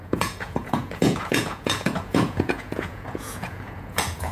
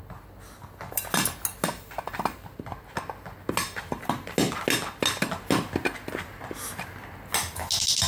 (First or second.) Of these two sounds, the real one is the second